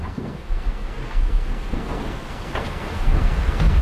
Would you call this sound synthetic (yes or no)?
yes